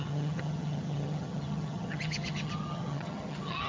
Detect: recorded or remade remade